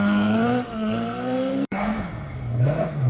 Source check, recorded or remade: remade